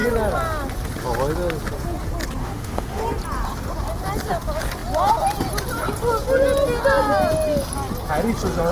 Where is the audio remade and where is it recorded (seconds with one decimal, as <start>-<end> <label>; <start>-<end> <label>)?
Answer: 0.0-2.4 recorded; 2.4-3.0 remade; 3.0-8.7 recorded